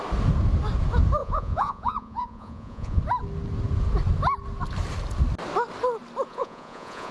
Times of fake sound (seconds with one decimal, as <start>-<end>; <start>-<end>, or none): 1.2-3.0; 6.3-7.1